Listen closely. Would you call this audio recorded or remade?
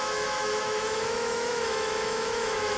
remade